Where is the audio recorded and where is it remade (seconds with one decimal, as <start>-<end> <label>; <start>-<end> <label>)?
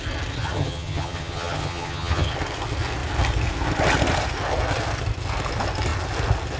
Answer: 0.0-0.4 recorded; 0.4-2.3 remade; 2.3-6.6 recorded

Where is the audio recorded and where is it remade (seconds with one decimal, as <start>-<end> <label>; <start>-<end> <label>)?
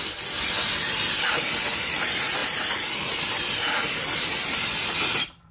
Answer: 0.0-5.5 recorded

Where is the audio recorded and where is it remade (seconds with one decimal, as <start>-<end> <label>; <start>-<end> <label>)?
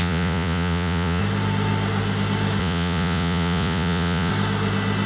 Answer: 0.0-1.2 remade; 1.2-2.6 recorded; 2.6-4.3 remade; 4.3-5.1 recorded